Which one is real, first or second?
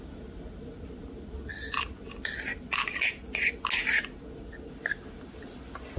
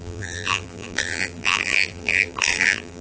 first